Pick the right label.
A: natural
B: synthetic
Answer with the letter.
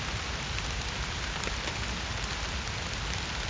A